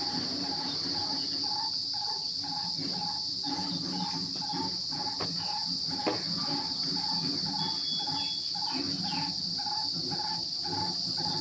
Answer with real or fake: real